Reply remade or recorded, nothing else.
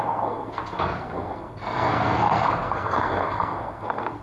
remade